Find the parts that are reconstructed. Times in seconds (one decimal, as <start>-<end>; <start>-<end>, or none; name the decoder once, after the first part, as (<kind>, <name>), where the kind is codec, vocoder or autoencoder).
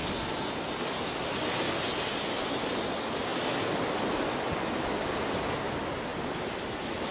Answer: none